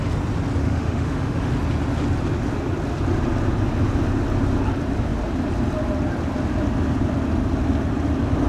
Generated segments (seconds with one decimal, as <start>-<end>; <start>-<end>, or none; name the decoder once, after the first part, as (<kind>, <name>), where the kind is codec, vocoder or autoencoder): 0.6-1.5 (autoencoder, DAC-VAE)